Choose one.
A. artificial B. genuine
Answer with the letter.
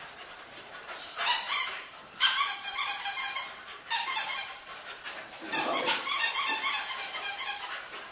A